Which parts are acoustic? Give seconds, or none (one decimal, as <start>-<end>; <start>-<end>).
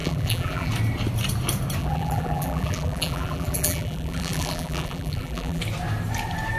0.7-1.8; 5.6-6.6